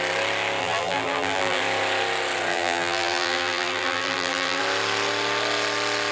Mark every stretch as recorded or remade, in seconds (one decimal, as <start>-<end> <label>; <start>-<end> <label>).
0.0-0.6 recorded; 0.6-1.6 remade; 1.6-2.5 recorded; 2.5-4.6 remade; 4.6-6.1 recorded